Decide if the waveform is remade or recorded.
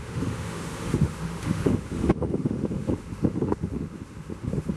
remade